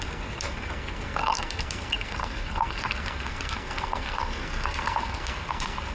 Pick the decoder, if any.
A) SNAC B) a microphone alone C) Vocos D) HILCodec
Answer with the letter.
A